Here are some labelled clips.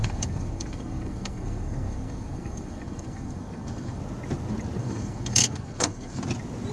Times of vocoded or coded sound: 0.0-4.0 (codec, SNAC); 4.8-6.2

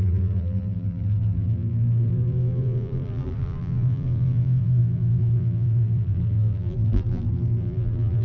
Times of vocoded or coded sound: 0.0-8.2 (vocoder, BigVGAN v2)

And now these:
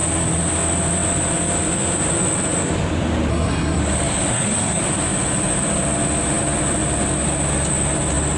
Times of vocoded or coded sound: 3.3-3.8 (codec, SNAC); 4.3-4.8

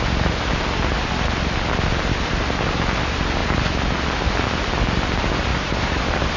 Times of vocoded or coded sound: 5.5-6.4 (vocoder, BigVGAN v2)